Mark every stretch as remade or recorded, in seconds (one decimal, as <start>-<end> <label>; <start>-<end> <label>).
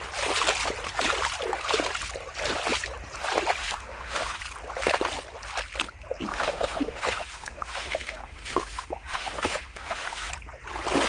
0.0-3.6 recorded; 3.6-4.4 remade; 4.4-6.3 recorded; 6.3-10.3 remade; 10.3-11.1 recorded